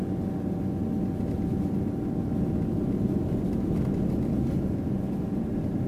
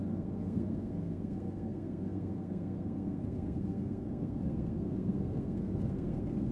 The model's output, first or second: second